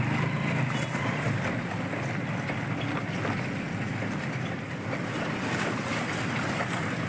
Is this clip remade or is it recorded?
recorded